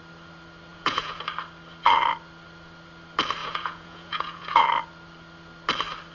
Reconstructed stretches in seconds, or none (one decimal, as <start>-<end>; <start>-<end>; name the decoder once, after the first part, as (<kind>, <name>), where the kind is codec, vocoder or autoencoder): 0.7-1.2 (vocoder, Vocos); 3.4-4.6